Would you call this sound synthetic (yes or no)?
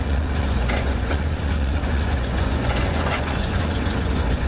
yes